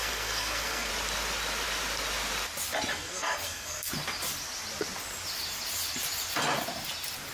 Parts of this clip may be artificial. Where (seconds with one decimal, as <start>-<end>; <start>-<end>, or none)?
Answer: 0.0-0.9; 2.9-3.9